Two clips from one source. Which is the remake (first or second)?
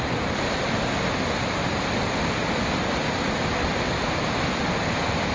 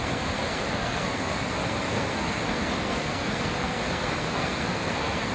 second